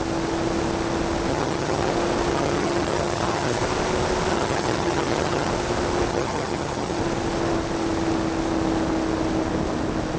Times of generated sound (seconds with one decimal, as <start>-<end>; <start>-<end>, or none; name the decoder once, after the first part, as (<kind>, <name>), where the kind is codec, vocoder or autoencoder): 1.3-1.9 (vocoder, HiFi-GAN); 2.3-3.6; 4.3-5.5; 6.1-7.0